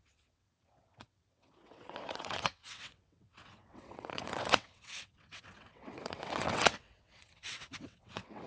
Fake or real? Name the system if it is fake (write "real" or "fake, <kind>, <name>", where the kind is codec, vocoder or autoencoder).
fake, vocoder, WaveNeXt